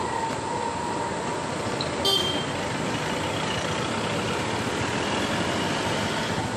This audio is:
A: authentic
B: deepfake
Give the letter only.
A